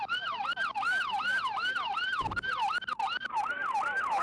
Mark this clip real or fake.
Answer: real